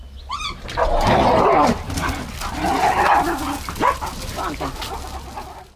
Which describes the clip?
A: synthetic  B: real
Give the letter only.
B